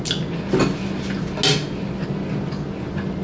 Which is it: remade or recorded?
recorded